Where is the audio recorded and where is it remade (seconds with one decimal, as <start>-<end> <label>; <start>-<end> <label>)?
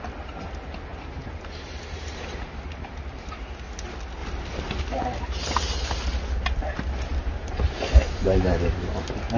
0.0-0.9 recorded; 0.9-3.5 remade; 3.5-4.2 recorded; 4.2-4.8 remade; 4.8-7.1 recorded; 7.1-9.4 remade